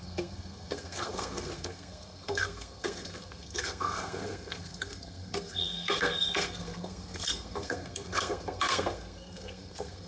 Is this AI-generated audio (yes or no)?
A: yes